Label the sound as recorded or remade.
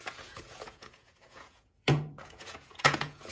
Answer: remade